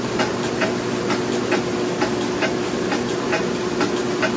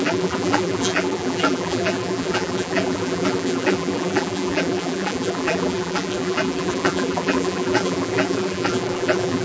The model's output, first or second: second